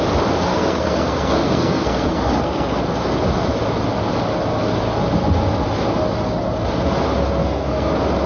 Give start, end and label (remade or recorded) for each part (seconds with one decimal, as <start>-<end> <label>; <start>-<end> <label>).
0.0-0.5 recorded; 0.5-2.8 remade; 2.8-7.4 recorded; 7.4-7.9 remade; 7.9-8.3 recorded